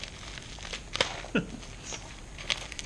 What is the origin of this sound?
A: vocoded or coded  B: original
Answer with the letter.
B